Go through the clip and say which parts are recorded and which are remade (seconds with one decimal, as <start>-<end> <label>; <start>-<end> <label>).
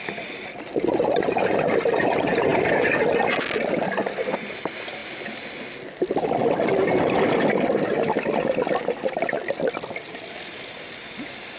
0.0-11.6 recorded